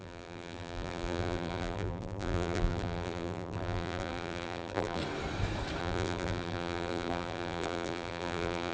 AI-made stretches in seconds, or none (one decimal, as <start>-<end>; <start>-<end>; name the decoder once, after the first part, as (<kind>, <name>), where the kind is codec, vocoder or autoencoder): 0.0-5.0 (vocoder, BigVGAN v2); 5.8-8.7